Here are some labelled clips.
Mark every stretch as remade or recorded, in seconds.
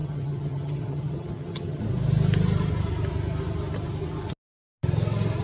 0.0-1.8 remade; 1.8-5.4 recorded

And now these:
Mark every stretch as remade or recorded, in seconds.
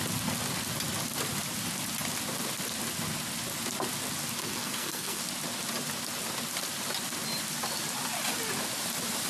0.0-4.4 recorded; 4.4-5.2 remade; 5.2-9.3 recorded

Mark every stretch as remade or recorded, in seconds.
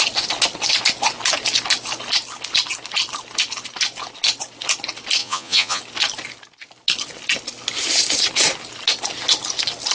0.0-5.2 recorded; 5.2-5.8 remade; 5.8-9.9 recorded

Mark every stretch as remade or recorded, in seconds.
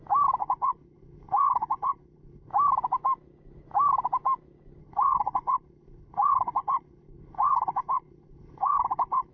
0.0-0.4 recorded; 0.4-2.5 remade; 2.5-4.8 recorded; 4.8-9.3 remade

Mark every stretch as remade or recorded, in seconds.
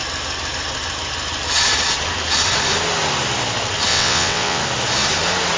0.0-3.9 recorded; 3.9-4.6 remade; 4.6-5.6 recorded